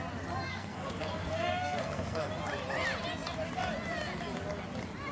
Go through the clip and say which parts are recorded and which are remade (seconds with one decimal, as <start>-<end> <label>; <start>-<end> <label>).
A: 0.0-0.5 recorded; 0.5-2.3 remade; 2.3-5.1 recorded